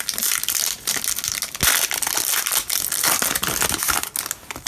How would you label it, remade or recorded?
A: recorded